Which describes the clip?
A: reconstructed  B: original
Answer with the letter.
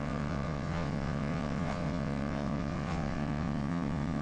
A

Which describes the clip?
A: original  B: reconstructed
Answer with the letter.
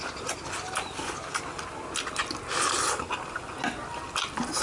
A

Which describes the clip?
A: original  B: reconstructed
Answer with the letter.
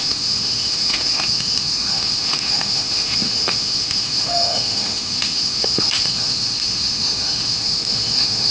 B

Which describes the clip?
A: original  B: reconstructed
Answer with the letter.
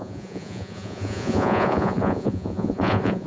B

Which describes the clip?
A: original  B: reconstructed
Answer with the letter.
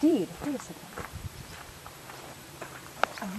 B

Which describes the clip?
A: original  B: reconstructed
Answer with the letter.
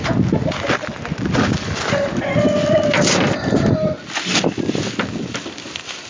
A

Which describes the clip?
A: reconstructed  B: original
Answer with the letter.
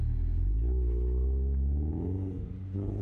B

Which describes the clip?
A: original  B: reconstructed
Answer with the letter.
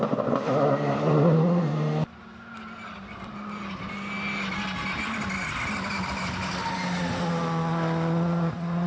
A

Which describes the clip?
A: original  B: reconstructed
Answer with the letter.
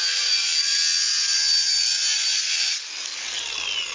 A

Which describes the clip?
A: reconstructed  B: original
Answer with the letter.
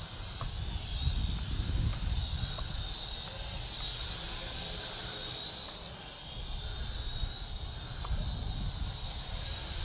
B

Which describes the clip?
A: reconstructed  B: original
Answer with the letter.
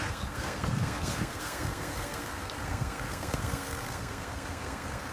A